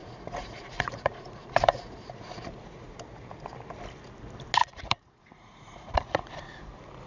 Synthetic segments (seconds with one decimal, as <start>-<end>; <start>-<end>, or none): 0.0-2.9; 4.6-6.3